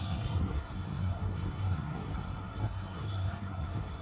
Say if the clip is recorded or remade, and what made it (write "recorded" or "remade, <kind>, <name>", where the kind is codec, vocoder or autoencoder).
remade, codec, SNAC